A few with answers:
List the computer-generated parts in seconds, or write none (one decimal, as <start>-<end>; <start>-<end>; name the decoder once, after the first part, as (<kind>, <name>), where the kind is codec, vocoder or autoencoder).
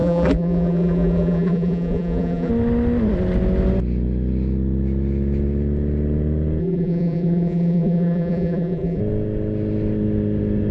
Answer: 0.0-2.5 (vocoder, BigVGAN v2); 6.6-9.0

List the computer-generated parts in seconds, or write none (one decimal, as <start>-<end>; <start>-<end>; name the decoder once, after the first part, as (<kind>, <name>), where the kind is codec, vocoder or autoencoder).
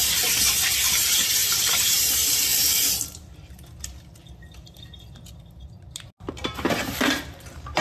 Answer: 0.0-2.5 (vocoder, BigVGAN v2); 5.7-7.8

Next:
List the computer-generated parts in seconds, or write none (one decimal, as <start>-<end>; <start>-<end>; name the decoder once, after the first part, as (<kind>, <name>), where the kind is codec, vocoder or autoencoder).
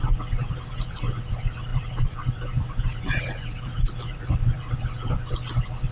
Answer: 1.7-4.7 (vocoder, BigVGAN v2)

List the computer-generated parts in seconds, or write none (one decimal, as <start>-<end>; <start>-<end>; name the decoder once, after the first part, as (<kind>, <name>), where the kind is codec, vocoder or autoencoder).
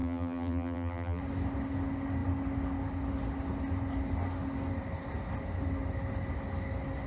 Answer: 0.0-1.2 (vocoder, BigVGAN v2)